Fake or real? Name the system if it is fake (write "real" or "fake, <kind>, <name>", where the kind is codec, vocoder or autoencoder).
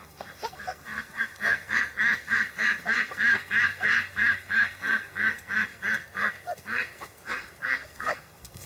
fake, codec, SNAC